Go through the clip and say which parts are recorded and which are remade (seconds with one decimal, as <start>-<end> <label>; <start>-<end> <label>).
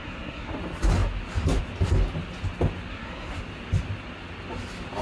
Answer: 0.0-0.5 remade; 0.5-2.9 recorded; 2.9-3.4 remade; 3.4-5.0 recorded